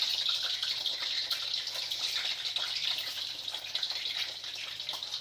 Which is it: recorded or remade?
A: recorded